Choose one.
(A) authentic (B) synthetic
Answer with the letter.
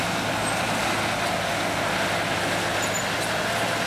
A